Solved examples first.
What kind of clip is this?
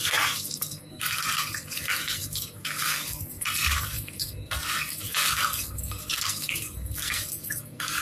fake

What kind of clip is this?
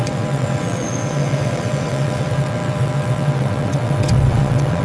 fake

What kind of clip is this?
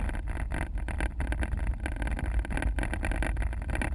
real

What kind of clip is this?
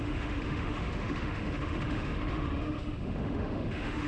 fake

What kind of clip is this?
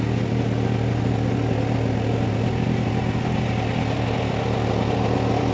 real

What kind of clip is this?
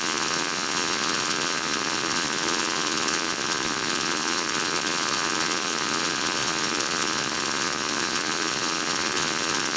fake